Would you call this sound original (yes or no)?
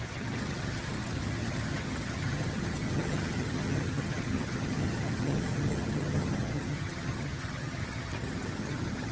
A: no